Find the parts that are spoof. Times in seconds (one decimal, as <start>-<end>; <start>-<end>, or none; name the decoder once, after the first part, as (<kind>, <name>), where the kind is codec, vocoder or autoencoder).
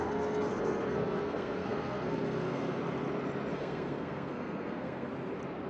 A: 0.0-2.8 (codec, SNAC); 3.5-5.1